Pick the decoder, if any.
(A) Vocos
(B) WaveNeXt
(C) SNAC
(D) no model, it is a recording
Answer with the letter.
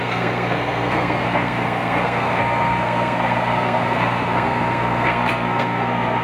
C